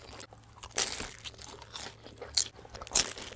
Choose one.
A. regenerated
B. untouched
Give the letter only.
B